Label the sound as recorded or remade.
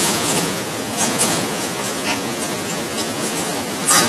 remade